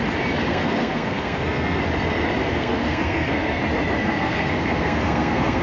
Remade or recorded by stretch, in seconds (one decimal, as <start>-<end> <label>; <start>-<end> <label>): 0.0-0.5 recorded; 0.5-1.8 remade; 1.8-2.4 recorded; 2.4-3.6 remade; 3.6-4.0 recorded; 4.0-5.6 remade